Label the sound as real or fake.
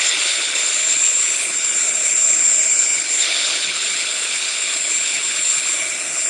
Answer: fake